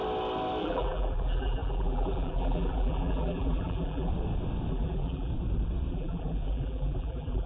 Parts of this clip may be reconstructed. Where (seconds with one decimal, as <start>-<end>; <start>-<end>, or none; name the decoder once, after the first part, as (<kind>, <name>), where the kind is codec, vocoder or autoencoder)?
0.6-4.1 (vocoder, BigVGAN v2); 4.7-5.3; 5.9-7.5